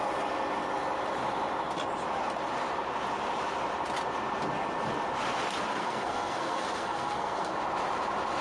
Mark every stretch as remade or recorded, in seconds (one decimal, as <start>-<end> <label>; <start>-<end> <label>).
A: 0.0-5.7 recorded; 5.7-7.6 remade; 7.6-8.4 recorded